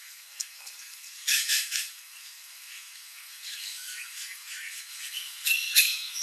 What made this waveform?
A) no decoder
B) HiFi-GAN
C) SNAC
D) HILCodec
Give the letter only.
C